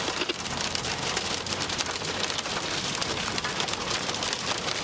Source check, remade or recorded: recorded